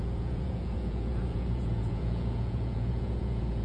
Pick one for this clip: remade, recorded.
remade